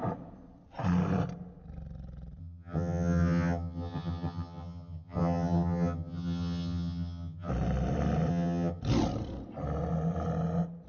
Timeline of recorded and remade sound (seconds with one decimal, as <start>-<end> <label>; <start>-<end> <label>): 0.0-2.4 recorded; 2.4-7.5 remade; 7.5-8.3 recorded; 8.3-8.8 remade; 8.8-10.9 recorded